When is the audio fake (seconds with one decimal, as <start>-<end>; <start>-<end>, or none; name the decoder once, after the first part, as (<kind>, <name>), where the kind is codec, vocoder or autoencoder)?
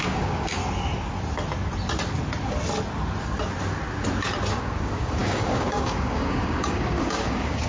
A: 0.0-0.6 (codec, DAC); 4.5-7.7